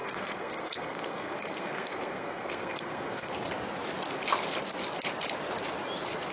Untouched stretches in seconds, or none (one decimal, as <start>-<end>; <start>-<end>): 3.3-6.3